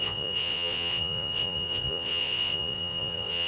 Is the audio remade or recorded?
remade